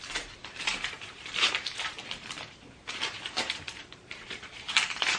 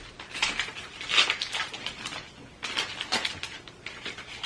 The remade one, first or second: first